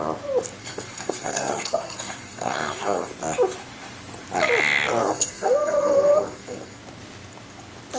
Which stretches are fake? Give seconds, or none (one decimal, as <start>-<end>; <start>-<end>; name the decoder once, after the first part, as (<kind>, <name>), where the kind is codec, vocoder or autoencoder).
0.6-3.1 (codec, SNAC); 5.0-6.8